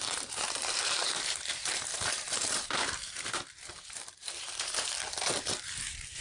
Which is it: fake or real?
fake